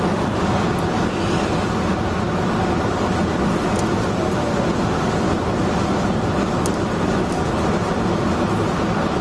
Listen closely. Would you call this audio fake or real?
real